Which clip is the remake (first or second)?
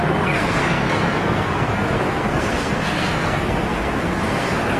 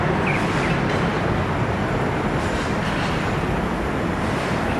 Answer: first